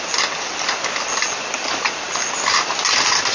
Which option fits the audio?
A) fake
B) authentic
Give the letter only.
B